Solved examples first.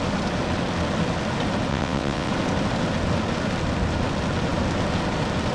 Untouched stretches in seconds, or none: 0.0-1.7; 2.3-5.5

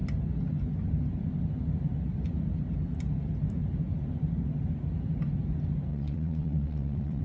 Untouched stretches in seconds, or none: 0.0-5.9

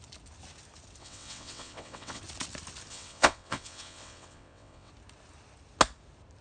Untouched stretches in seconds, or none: 0.0-1.0; 2.2-2.9; 4.9-6.4

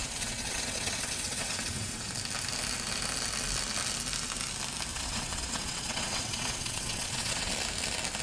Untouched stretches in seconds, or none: 2.1-4.9; 7.5-8.2

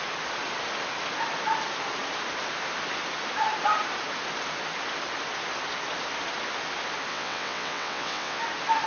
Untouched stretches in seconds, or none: 0.0-7.1; 8.4-8.9

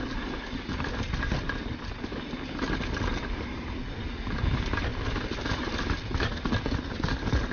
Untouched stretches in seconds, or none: 0.0-7.5